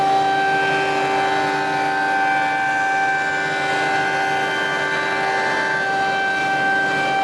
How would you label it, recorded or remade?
recorded